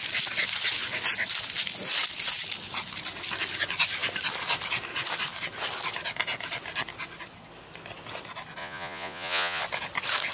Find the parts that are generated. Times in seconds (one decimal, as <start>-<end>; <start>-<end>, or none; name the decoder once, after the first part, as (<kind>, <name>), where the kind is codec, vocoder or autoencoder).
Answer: 8.6-9.6 (vocoder, Vocos)